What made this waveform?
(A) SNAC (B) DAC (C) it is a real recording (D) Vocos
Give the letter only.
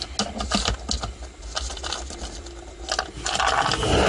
C